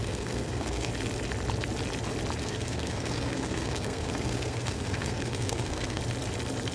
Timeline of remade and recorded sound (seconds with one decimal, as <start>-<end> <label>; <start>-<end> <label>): 0.0-0.9 remade; 0.9-2.4 recorded; 2.4-6.0 remade; 6.0-6.7 recorded